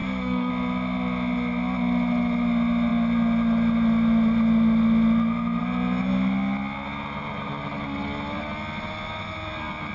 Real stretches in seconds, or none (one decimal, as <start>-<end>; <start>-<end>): 0.5-9.9